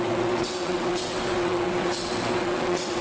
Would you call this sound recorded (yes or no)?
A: no